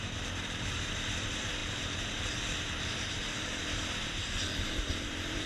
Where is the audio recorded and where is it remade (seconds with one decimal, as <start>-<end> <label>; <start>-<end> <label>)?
0.0-5.5 remade